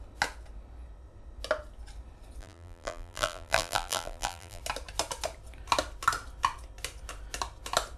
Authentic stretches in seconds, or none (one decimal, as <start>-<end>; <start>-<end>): 0.0-2.4; 4.6-8.0